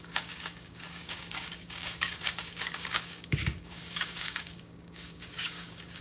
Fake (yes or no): yes